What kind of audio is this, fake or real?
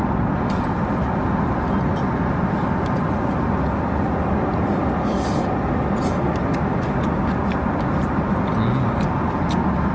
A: real